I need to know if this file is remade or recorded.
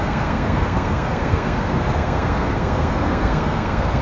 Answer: remade